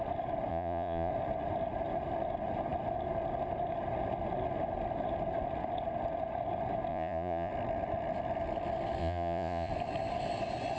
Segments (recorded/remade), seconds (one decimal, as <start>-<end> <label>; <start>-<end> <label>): 0.0-0.5 recorded; 0.5-1.1 remade; 1.1-6.9 recorded; 6.9-7.5 remade; 7.5-9.0 recorded; 9.0-9.7 remade; 9.7-10.8 recorded